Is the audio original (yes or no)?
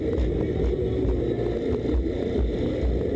yes